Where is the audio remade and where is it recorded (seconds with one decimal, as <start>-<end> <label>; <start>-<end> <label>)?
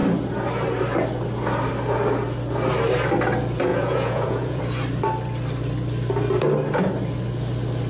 0.0-3.7 recorded; 3.7-4.6 remade; 4.6-7.9 recorded